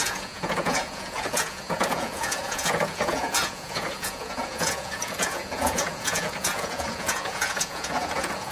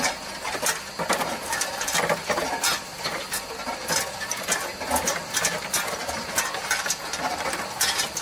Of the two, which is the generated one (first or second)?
first